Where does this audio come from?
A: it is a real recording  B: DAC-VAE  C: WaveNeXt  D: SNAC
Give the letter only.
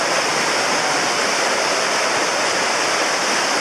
A